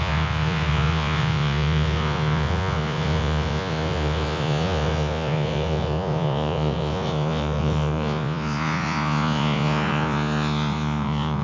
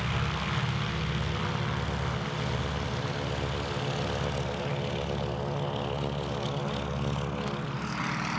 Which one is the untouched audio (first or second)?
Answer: second